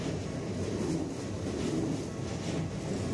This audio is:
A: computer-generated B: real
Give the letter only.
B